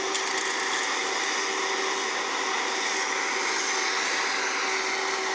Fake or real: real